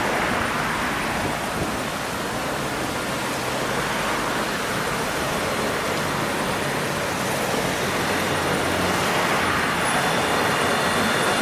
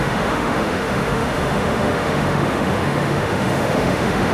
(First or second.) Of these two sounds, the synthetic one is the second